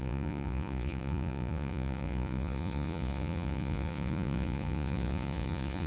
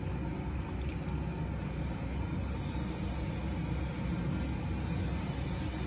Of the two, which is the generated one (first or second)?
first